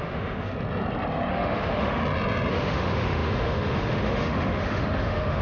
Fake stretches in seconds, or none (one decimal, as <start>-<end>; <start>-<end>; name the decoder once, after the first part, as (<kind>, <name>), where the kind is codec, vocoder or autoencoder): 0.0-0.5 (autoencoder, DAC-VAE); 1.3-2.0; 2.5-5.4